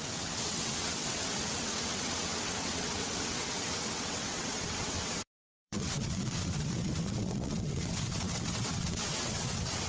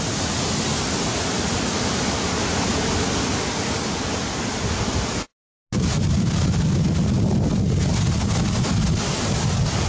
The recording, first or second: second